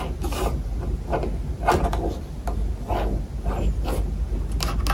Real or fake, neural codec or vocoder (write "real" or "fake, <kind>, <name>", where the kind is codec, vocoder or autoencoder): real